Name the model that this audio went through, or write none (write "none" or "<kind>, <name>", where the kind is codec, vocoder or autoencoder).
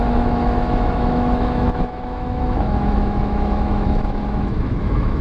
autoencoder, DAC-VAE